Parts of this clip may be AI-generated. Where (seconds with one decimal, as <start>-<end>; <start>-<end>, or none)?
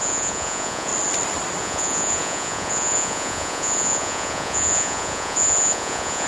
0.0-0.9; 1.6-6.3